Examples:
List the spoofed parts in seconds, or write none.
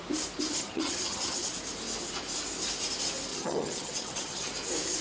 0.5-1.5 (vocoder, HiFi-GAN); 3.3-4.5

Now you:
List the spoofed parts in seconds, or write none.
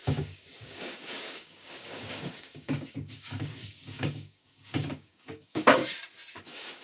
0.0-5.8 (codec, DAC); 6.3-6.8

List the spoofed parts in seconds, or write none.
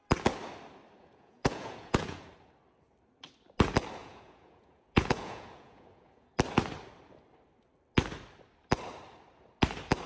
1.0-2.3 (vocoder, Vocos); 4.0-6.3